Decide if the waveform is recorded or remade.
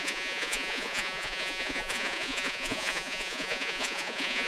remade